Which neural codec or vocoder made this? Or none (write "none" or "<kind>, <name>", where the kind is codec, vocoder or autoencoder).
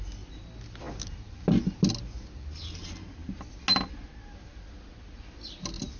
none